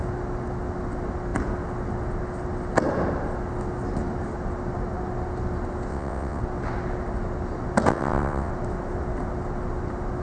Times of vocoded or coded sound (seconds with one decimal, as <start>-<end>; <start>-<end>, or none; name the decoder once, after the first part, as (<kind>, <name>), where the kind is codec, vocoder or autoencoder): 5.9-6.4 (vocoder, WaveNeXt); 7.9-8.5